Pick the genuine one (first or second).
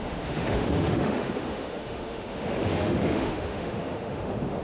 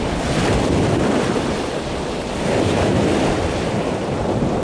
second